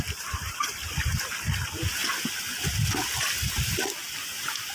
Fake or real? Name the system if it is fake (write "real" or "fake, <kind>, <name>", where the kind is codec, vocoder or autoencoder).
real